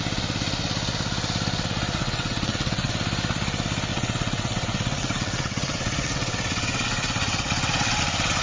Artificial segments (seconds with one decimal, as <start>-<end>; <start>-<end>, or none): 2.0-2.9; 3.9-8.0